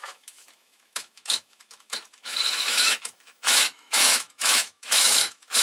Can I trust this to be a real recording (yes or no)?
no